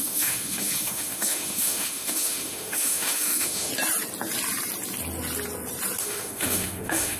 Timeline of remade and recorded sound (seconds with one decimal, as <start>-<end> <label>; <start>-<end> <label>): 0.0-3.7 remade; 3.7-6.0 recorded; 6.0-7.2 remade